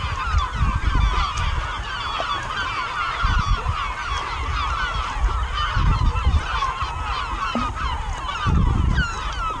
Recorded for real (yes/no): yes